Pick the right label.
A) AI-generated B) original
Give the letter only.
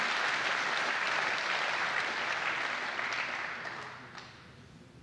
B